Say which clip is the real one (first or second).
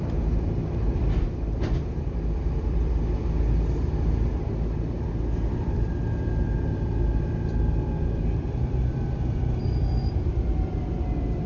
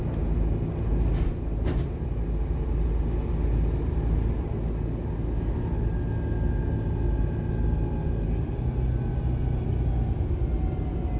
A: second